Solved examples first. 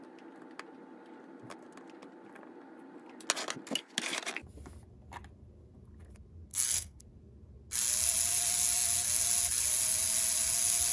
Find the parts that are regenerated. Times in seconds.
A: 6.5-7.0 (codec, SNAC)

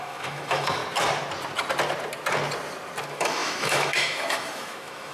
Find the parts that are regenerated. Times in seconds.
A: 0.0-0.8 (autoencoder, DAC-VAE); 3.0-5.1

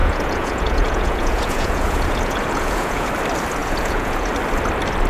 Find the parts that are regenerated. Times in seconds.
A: 0.0-3.1 (vocoder, Vocos); 3.6-4.3